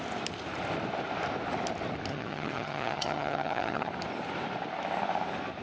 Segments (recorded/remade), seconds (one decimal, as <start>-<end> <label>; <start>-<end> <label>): 0.0-2.1 recorded; 2.1-3.9 remade; 3.9-5.6 recorded